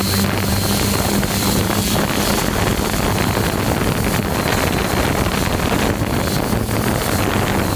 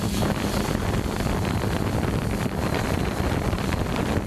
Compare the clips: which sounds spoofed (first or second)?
second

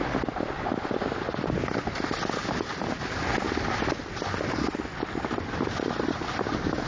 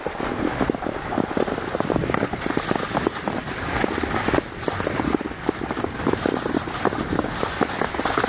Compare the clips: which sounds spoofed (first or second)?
second